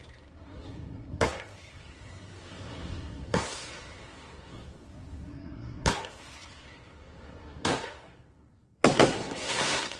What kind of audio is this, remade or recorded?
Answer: remade